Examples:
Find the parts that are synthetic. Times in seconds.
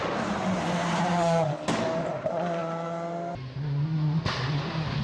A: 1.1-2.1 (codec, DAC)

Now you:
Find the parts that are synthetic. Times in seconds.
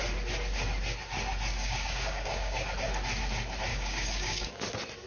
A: 1.5-2.6 (codec, DAC); 3.7-4.5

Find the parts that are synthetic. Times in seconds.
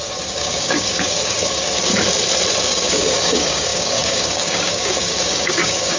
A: 0.0-1.9 (codec, DAC); 2.6-6.0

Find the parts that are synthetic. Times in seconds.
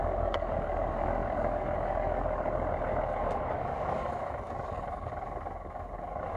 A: 0.0-6.4 (codec, DAC)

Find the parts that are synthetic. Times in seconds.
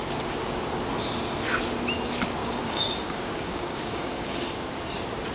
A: 2.4-4.7 (codec, DAC)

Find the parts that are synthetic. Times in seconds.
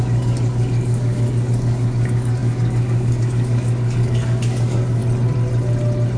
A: 0.0-5.0 (codec, DAC)